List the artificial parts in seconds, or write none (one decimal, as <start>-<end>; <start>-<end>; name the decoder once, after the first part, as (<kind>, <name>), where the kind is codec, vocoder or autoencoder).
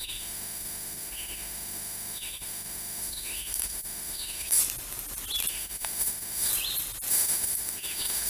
0.0-4.6 (autoencoder, DAC-VAE); 5.5-6.5; 7.1-8.3